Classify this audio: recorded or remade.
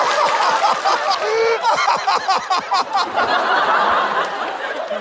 recorded